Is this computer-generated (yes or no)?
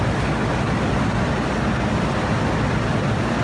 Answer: no